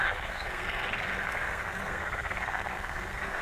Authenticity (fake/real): fake